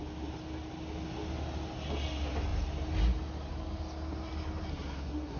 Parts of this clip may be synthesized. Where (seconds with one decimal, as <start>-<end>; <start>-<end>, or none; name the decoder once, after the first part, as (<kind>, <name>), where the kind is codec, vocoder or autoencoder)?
4.7-5.4 (codec, SNAC)